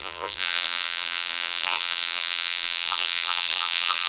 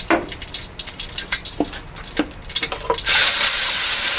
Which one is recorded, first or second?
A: second